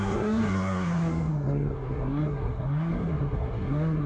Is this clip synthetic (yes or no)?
yes